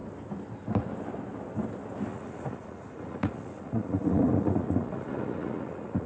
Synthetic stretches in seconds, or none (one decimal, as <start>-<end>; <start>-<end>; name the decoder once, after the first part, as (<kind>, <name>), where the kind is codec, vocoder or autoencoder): 2.1-6.1 (vocoder, Vocos)